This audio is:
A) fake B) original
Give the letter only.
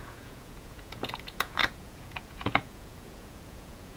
A